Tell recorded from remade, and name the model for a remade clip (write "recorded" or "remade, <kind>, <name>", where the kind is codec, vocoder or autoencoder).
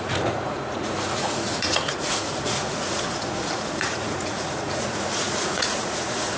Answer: remade, vocoder, Vocos